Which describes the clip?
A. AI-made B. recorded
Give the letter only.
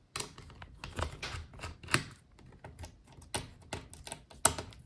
B